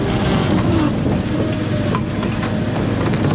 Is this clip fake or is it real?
real